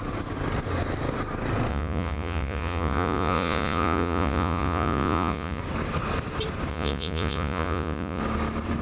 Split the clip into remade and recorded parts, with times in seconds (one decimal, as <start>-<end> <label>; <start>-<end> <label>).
0.0-1.7 recorded; 1.7-5.6 remade; 5.6-6.7 recorded; 6.7-8.2 remade; 8.2-8.8 recorded